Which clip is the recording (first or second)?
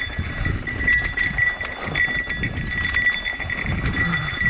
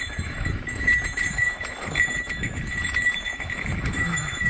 first